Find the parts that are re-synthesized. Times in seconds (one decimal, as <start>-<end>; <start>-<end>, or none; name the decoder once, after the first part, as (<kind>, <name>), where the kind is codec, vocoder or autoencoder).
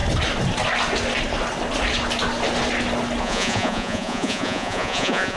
3.2-5.4 (vocoder, Vocos)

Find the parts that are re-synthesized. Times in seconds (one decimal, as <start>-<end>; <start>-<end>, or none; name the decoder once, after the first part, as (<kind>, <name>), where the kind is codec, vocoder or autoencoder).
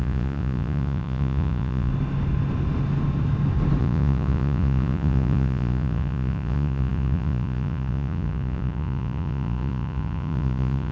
0.0-1.9 (vocoder, Vocos); 3.8-10.9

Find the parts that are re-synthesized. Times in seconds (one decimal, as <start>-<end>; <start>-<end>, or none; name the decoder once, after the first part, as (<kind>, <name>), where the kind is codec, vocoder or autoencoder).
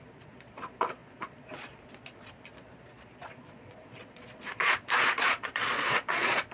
0.0-6.5 (vocoder, Vocos)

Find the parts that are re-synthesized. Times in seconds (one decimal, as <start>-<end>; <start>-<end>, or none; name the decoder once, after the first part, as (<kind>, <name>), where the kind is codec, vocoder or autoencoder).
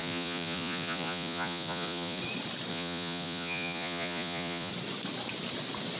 0.0-2.2 (vocoder, Vocos); 2.7-4.7